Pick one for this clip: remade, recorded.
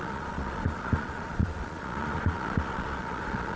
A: remade